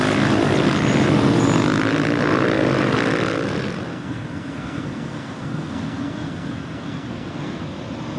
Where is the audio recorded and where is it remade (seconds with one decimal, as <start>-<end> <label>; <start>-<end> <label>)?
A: 0.0-3.9 recorded; 3.9-7.6 remade; 7.6-8.2 recorded